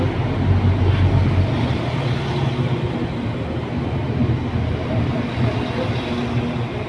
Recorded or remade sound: recorded